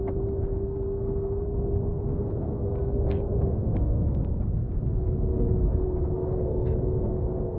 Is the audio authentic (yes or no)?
no